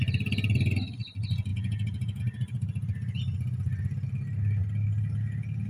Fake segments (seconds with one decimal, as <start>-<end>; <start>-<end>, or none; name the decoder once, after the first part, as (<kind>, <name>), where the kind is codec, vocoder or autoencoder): 1.5-2.2 (vocoder, Vocos)